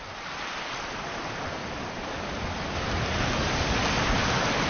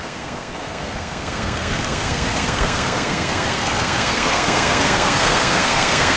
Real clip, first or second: first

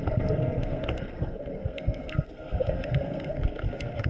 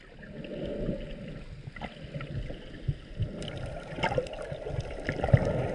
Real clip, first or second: second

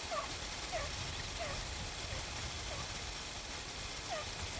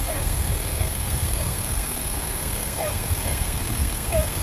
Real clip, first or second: first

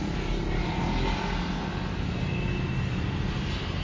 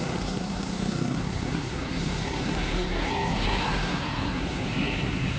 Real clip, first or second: first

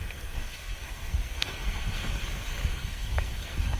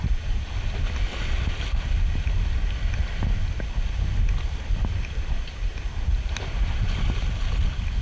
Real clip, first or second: second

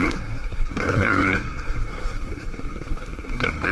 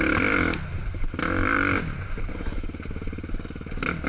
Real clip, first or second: second